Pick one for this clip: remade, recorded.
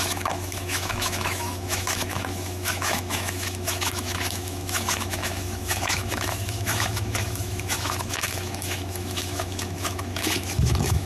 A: remade